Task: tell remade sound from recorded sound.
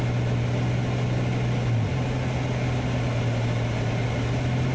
recorded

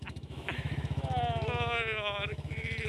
remade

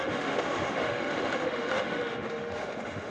remade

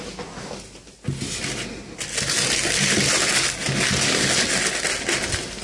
recorded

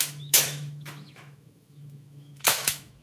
remade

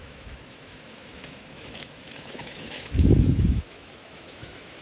remade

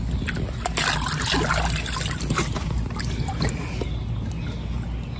recorded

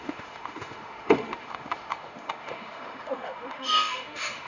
remade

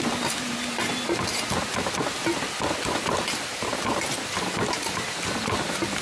recorded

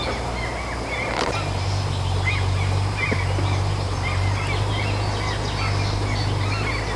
recorded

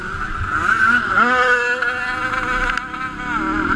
recorded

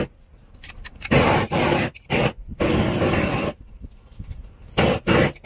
recorded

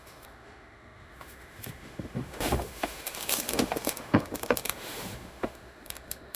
remade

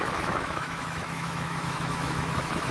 remade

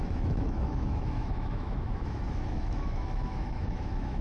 remade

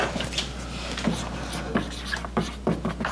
recorded